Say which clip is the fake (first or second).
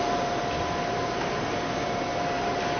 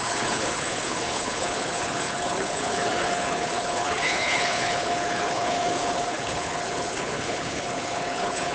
second